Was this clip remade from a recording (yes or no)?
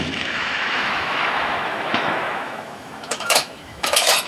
yes